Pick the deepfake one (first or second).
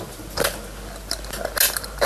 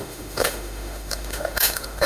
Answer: second